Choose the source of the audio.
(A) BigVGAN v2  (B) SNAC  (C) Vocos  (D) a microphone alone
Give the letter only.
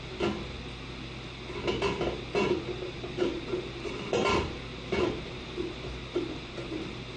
D